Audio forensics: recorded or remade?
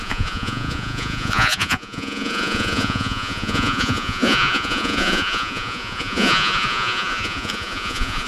remade